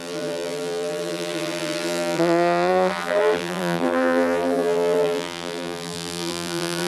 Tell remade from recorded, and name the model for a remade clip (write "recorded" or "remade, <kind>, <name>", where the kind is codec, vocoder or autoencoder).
remade, vocoder, BigVGAN v2